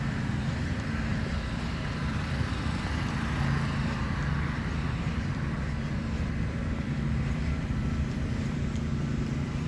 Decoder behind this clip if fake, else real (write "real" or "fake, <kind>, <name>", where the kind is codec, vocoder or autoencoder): fake, vocoder, BigVGAN v2